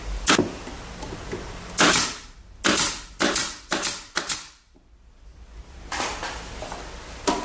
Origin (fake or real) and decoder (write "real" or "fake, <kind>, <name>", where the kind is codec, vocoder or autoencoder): real